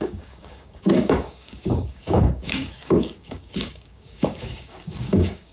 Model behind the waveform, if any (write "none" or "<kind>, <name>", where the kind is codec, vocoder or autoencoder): codec, DAC